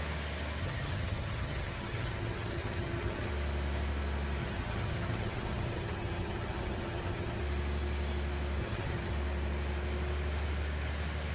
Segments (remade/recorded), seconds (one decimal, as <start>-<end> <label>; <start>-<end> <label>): 0.0-0.6 recorded; 0.6-3.3 remade; 3.3-4.4 recorded; 4.4-7.4 remade; 7.4-8.6 recorded; 8.6-9.1 remade; 9.1-11.3 recorded